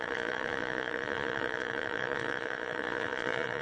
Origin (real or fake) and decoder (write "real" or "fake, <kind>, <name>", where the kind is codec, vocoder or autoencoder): fake, vocoder, Vocos